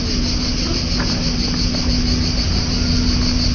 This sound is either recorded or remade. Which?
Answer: recorded